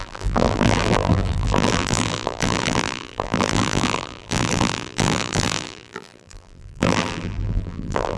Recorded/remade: remade